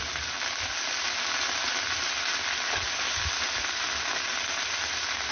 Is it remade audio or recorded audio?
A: recorded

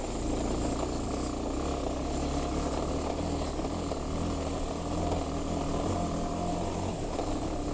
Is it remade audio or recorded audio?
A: recorded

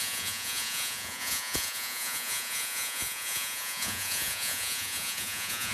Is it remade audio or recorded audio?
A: remade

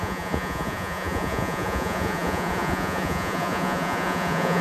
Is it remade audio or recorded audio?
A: remade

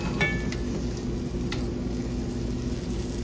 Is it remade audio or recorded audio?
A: recorded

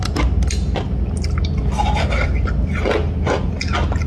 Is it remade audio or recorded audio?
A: recorded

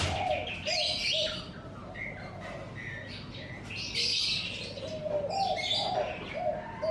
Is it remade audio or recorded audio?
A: recorded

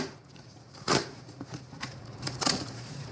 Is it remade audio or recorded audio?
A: remade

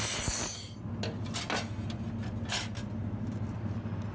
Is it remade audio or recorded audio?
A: recorded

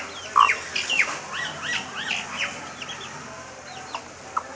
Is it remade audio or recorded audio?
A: recorded